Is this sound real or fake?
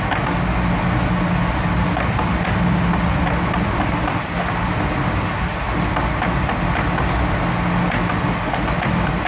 real